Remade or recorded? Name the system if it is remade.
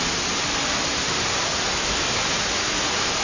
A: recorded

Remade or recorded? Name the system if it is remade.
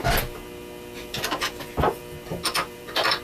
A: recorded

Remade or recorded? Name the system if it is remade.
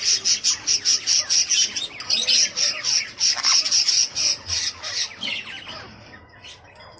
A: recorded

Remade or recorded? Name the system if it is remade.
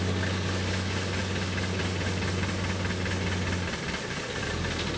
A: recorded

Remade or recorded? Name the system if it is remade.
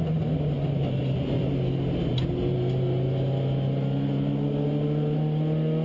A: recorded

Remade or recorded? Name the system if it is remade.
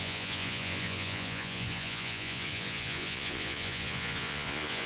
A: remade, vocoder, Vocos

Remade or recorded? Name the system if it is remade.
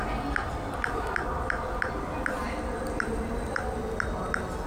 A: recorded